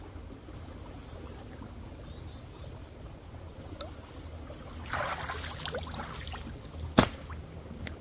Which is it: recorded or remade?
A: recorded